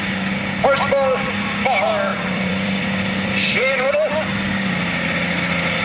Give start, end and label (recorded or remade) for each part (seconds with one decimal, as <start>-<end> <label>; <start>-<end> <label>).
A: 0.0-2.1 recorded; 2.1-3.9 remade; 3.9-5.8 recorded